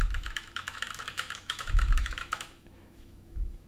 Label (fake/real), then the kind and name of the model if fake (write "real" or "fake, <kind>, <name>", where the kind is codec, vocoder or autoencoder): fake, autoencoder, DAC-VAE